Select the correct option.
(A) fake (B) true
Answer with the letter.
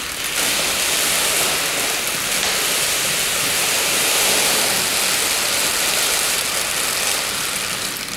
B